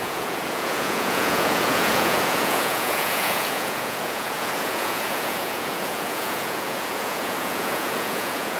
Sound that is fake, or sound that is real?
fake